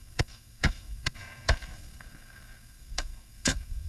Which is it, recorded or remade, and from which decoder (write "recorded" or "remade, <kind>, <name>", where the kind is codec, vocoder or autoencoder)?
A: remade, codec, SNAC